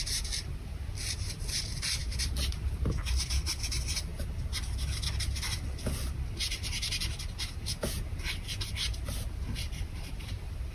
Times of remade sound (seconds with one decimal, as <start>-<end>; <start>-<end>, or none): 0.0-4.1; 9.3-10.7